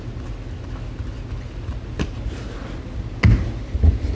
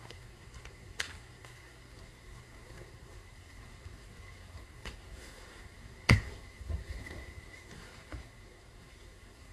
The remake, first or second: second